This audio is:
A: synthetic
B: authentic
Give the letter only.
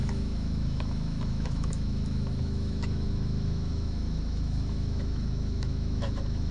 A